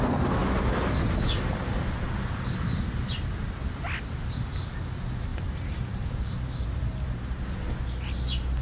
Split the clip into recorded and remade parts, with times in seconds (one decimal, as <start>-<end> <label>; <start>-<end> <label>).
0.0-5.3 recorded; 5.3-7.4 remade; 7.4-8.6 recorded